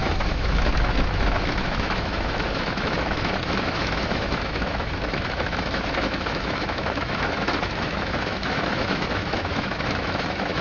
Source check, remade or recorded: remade